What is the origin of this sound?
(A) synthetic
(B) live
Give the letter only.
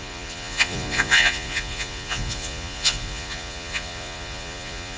A